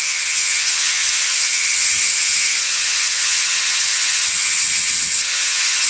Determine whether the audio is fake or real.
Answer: fake